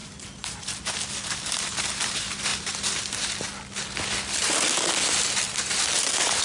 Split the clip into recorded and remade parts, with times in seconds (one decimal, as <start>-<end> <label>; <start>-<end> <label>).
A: 0.0-6.4 recorded